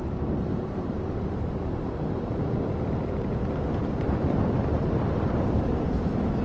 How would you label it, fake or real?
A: fake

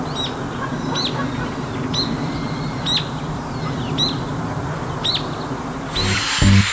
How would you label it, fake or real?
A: real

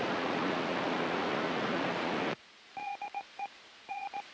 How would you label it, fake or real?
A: fake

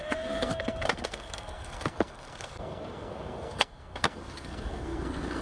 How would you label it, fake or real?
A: fake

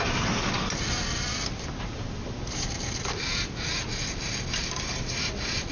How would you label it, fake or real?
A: fake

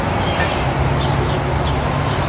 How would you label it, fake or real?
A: real